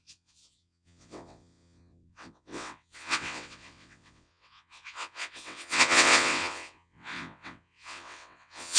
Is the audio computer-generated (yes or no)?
yes